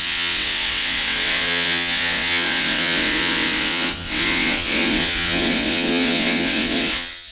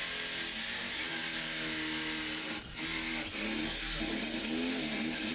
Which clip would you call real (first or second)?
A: second